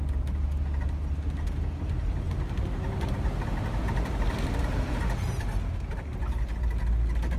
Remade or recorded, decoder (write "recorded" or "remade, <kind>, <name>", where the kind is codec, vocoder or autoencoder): recorded